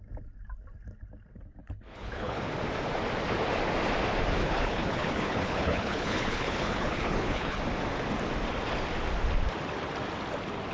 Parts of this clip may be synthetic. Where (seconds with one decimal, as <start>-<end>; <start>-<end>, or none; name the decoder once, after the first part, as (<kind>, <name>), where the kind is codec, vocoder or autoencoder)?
1.6-2.4 (codec, HILCodec); 4.4-7.6